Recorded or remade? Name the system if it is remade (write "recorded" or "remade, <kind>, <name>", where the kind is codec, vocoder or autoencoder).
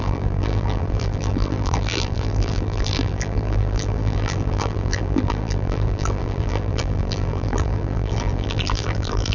remade, vocoder, BigVGAN v2